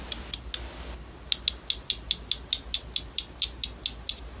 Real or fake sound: real